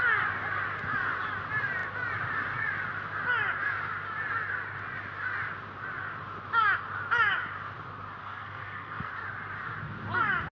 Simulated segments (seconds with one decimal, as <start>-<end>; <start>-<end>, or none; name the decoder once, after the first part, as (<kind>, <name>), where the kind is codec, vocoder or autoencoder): 8.2-9.1 (codec, SNAC)